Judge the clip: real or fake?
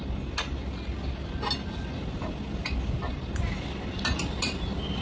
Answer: real